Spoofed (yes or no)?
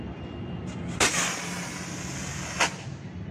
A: no